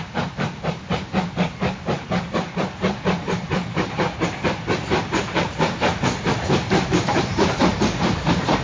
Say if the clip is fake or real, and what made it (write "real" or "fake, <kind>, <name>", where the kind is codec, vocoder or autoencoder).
fake, vocoder, BigVGAN v2